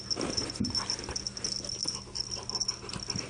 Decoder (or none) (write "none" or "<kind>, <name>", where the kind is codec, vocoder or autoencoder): none